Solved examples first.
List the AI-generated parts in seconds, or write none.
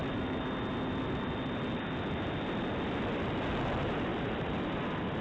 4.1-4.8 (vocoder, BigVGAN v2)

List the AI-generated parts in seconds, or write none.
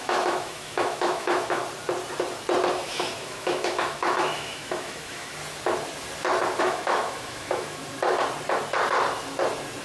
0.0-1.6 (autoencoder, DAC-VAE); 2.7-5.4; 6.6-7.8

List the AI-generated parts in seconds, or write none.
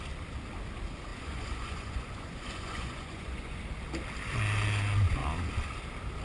1.1-3.6 (vocoder, Vocos)